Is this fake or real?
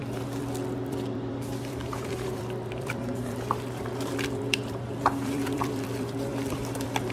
fake